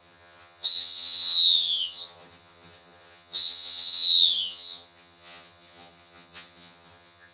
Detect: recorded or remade remade